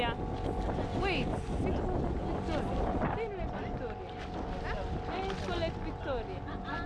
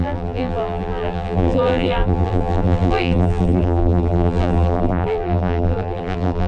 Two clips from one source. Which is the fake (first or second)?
second